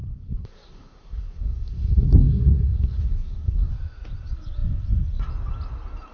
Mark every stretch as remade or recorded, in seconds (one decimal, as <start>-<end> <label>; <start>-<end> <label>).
0.0-3.7 remade; 3.7-6.1 recorded